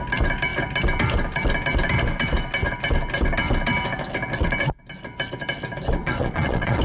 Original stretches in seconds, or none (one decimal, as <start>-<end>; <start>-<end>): 0.0-6.0